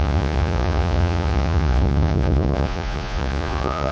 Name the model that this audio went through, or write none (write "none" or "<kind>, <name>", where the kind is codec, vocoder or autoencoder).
vocoder, Vocos